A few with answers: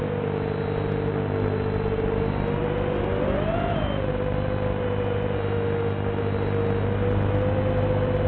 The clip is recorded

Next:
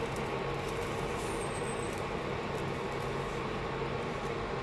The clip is recorded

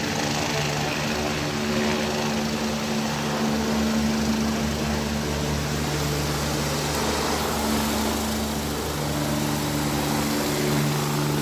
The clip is recorded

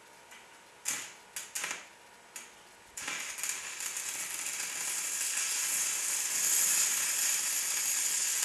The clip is recorded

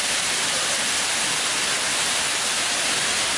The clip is recorded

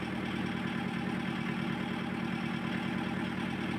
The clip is recorded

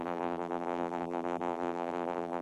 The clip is remade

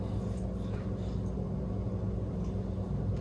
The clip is recorded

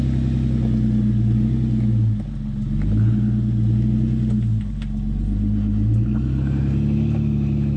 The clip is recorded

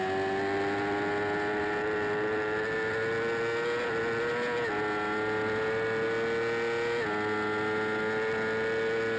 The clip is recorded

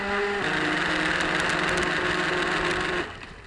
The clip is recorded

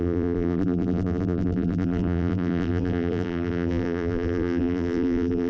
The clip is remade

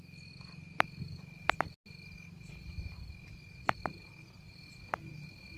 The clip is recorded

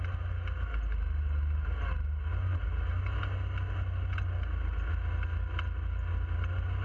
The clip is recorded